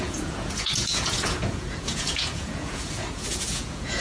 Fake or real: fake